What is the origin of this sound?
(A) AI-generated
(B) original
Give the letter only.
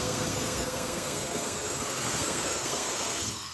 A